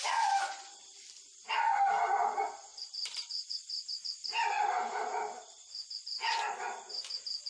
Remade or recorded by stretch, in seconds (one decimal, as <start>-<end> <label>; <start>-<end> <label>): 0.0-2.7 recorded; 2.7-3.7 remade; 3.7-4.2 recorded; 4.2-5.4 remade; 5.4-7.5 recorded